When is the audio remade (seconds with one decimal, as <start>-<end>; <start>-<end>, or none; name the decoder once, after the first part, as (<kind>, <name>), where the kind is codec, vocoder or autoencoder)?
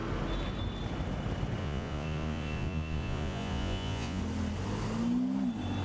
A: 1.6-4.2 (vocoder, Vocos)